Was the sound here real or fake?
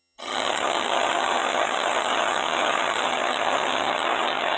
fake